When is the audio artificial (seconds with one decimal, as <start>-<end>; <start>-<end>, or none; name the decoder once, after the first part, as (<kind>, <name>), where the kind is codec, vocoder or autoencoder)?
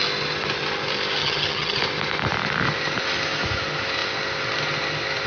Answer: 1.2-1.8 (vocoder, HiFi-GAN)